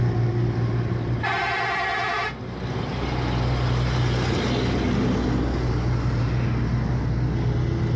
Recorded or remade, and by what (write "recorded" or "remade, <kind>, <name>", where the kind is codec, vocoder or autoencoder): recorded